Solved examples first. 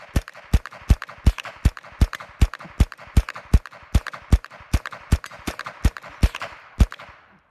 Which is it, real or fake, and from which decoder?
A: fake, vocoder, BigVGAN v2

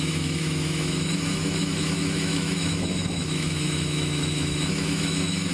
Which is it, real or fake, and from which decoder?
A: fake, autoencoder, DAC-VAE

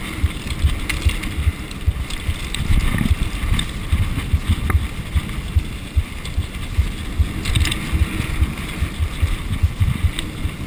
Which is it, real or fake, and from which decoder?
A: real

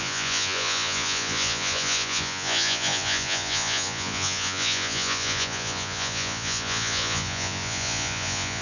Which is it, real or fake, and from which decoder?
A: fake, vocoder, Vocos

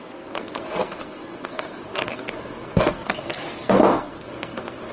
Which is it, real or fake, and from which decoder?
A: fake, codec, SNAC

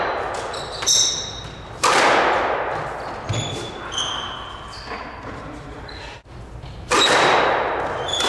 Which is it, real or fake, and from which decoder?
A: real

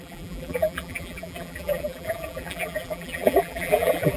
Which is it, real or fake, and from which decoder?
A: fake, vocoder, BigVGAN v2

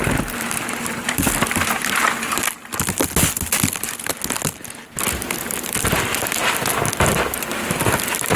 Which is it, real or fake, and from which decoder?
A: real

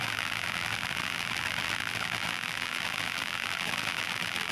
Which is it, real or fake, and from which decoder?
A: fake, vocoder, BigVGAN v2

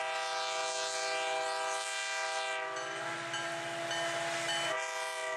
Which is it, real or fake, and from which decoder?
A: real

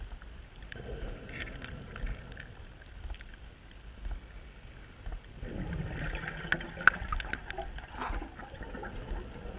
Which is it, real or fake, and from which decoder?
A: real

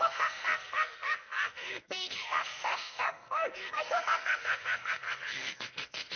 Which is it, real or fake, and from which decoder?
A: fake, codec, SNAC